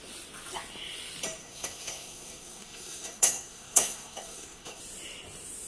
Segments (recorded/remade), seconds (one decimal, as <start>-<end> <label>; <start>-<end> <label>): 0.0-1.4 recorded; 1.4-4.8 remade; 4.8-5.7 recorded

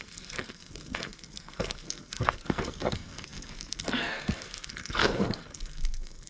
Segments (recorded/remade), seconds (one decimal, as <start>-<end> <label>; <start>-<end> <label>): 0.0-6.3 remade

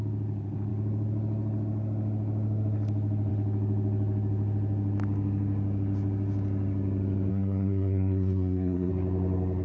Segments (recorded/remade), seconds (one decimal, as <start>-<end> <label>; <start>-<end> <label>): 0.0-7.3 recorded; 7.3-8.9 remade; 8.9-9.6 recorded

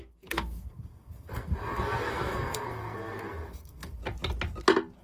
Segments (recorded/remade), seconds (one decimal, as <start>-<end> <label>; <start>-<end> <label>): 0.0-4.0 remade; 4.0-5.0 recorded

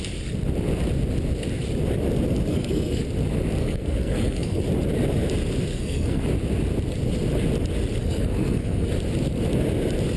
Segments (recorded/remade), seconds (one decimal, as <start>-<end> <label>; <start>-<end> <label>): 0.0-2.5 recorded; 2.5-3.0 remade; 3.0-3.6 recorded; 3.6-4.6 remade; 4.6-5.7 recorded; 5.7-6.2 remade; 6.2-8.0 recorded; 8.0-8.9 remade; 8.9-10.2 recorded

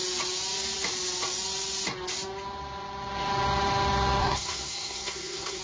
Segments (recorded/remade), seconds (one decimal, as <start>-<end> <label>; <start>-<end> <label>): 0.0-4.2 recorded; 4.2-5.6 remade

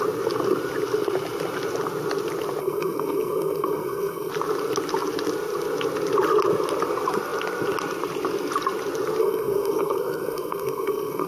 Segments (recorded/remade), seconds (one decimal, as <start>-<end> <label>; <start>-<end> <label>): 0.0-2.6 recorded; 2.6-4.3 remade; 4.3-9.2 recorded; 9.2-11.3 remade

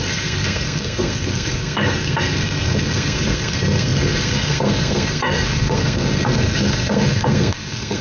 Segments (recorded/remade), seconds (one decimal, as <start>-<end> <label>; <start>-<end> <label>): 0.0-8.0 remade